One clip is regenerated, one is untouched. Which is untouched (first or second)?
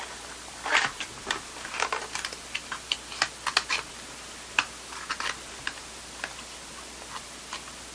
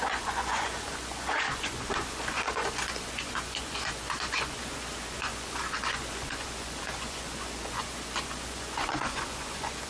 first